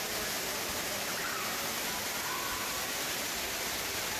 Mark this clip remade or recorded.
recorded